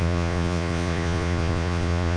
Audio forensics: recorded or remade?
remade